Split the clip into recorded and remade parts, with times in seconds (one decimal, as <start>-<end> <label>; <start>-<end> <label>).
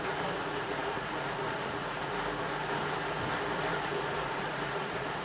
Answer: 0.0-0.4 recorded; 0.4-2.1 remade; 2.1-3.7 recorded; 3.7-5.2 remade